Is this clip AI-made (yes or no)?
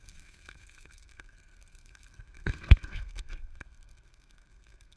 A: yes